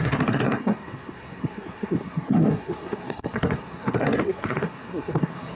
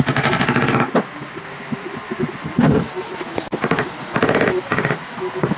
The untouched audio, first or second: second